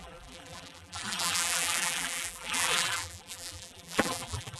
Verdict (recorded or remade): remade